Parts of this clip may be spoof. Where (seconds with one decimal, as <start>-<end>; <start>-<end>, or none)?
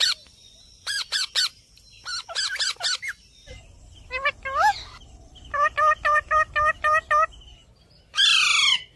0.4-1.4